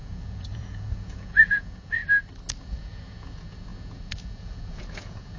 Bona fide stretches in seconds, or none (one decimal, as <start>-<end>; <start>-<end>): 2.0-2.6